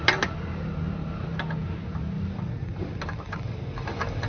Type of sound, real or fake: real